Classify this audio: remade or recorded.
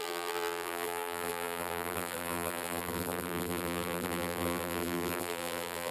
remade